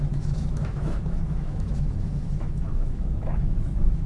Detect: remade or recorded remade